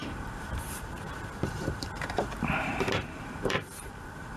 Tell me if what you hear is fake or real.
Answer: fake